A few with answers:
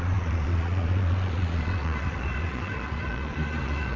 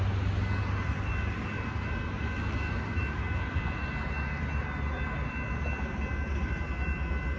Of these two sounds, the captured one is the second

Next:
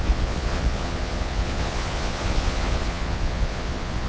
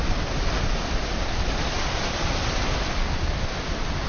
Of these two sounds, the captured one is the second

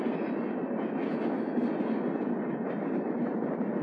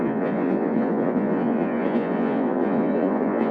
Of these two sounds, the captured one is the first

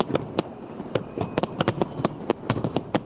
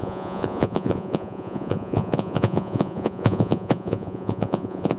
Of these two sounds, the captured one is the first